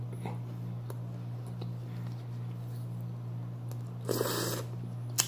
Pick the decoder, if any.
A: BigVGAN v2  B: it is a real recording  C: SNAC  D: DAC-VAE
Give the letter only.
B